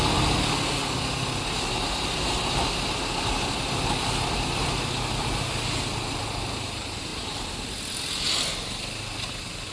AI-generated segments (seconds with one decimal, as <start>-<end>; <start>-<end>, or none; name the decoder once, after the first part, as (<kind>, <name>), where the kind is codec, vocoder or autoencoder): none